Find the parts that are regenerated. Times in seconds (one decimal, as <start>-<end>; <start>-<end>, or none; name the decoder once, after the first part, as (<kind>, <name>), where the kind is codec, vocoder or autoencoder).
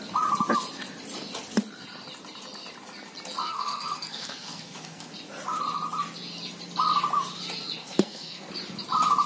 3.4-5.1 (codec, SNAC); 7.8-8.5